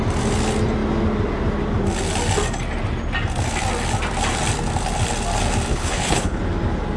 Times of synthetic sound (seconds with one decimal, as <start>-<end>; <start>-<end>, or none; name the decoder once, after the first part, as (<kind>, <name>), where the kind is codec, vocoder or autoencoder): 5.7-6.4 (codec, HILCodec)